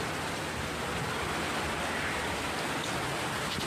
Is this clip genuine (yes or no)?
yes